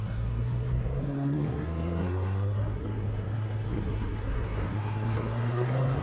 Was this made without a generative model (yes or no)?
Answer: no